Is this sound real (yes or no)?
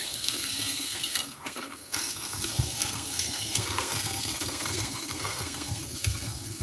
no